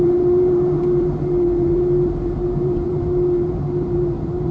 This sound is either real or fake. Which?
fake